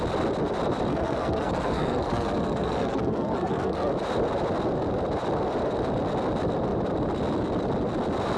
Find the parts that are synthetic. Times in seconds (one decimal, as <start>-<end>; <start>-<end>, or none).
0.9-3.9